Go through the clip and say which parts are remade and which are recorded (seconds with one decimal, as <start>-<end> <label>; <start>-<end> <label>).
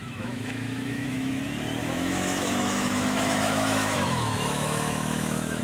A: 0.0-1.4 remade; 1.4-1.8 recorded; 1.8-5.6 remade